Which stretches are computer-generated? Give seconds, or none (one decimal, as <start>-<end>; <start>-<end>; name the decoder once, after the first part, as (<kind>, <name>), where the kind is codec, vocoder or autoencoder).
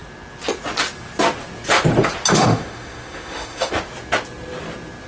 2.3-3.7 (autoencoder, DAC-VAE)